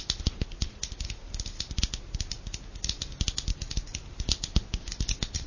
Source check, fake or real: real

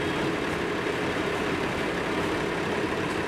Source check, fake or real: real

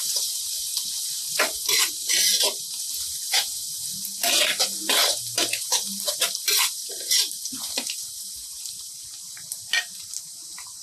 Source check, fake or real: fake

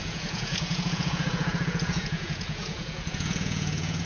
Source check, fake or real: fake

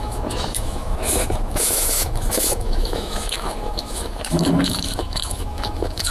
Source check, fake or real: fake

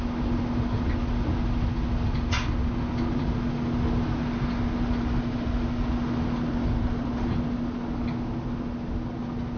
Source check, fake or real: real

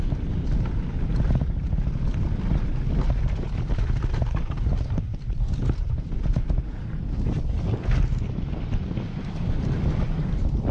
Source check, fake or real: real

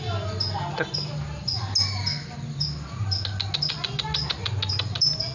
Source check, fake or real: real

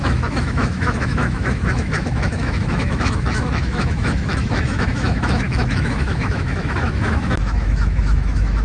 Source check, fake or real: fake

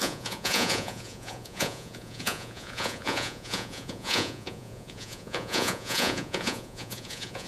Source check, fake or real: fake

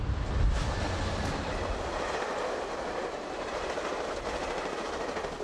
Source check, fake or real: real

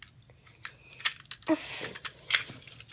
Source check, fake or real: real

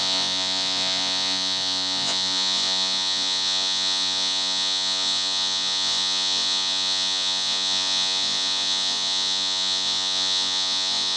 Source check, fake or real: fake